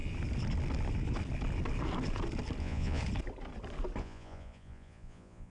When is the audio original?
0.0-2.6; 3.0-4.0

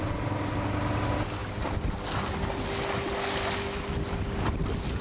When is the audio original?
0.0-5.0

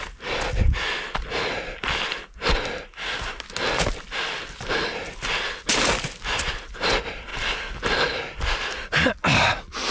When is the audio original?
0.0-7.3

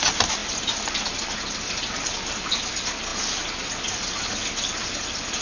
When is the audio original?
0.0-5.4

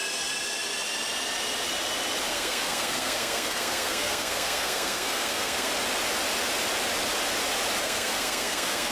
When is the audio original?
0.0-2.3; 5.7-7.8

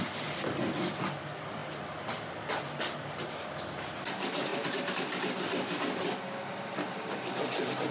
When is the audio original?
0.0-7.9

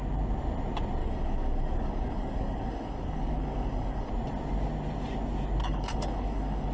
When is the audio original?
0.0-1.0; 4.1-5.6